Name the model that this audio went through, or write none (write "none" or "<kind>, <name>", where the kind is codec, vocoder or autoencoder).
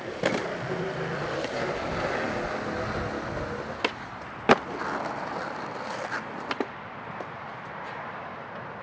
none